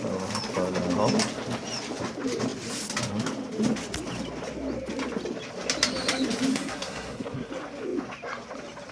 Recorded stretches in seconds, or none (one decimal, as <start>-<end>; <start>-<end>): 0.0-6.5; 7.5-8.9